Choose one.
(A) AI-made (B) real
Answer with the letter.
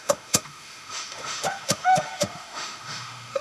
A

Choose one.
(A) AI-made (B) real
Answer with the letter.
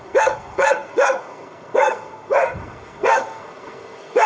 A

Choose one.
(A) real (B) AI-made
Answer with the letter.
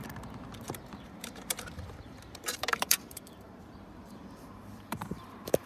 B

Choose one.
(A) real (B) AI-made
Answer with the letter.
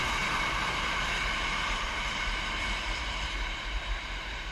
B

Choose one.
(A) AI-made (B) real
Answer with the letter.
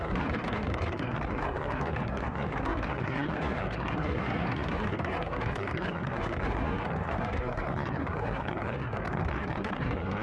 A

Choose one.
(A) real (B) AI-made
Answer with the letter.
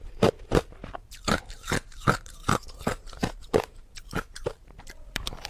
B